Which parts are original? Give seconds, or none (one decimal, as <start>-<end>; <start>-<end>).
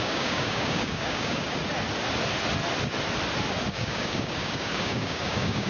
1.6-3.7